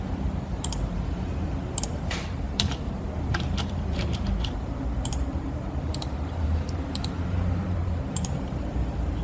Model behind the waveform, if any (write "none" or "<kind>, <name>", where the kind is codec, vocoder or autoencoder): vocoder, BigVGAN v2